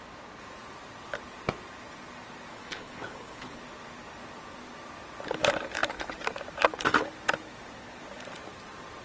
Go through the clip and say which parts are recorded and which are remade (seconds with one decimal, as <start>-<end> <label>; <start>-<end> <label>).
0.0-2.5 recorded; 2.5-3.6 remade; 3.6-9.0 recorded